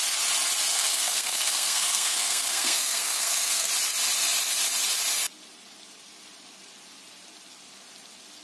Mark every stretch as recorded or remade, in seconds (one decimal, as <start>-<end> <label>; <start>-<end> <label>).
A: 0.0-0.7 recorded; 0.7-3.7 remade; 3.7-8.4 recorded